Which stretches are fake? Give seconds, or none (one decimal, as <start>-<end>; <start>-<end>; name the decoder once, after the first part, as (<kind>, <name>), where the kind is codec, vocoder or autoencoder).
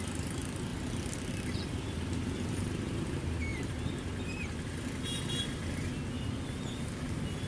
0.7-2.2 (vocoder, BigVGAN v2)